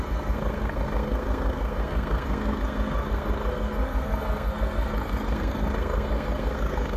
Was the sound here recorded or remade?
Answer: remade